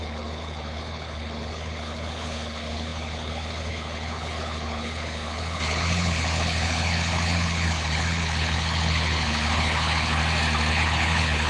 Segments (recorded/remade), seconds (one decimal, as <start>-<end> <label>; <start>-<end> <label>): 0.0-10.2 remade; 10.2-10.7 recorded; 10.7-11.5 remade